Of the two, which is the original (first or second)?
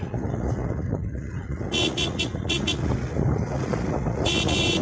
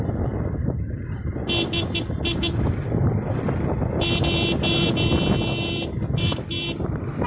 second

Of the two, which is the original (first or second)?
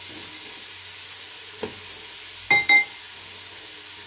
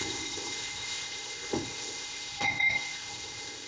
first